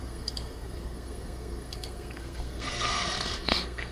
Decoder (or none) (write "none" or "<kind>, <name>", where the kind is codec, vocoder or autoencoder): codec, SNAC